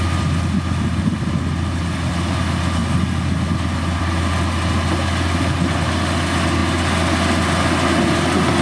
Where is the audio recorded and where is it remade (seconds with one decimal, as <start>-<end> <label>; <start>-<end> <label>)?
0.0-8.6 recorded